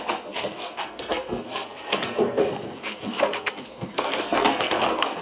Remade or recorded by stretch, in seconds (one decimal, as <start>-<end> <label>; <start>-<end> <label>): 0.0-5.2 remade